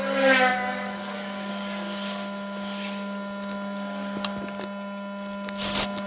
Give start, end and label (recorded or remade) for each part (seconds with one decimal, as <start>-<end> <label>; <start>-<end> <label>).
0.0-0.5 recorded; 0.5-1.5 remade; 1.5-6.1 recorded